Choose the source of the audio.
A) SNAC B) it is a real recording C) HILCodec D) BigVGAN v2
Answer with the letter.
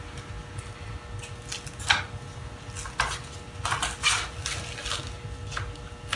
B